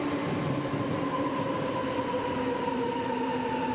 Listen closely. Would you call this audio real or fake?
fake